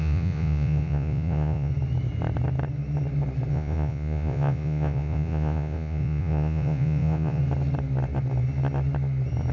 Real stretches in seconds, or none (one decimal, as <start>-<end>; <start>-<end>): 1.7-3.5; 7.4-9.5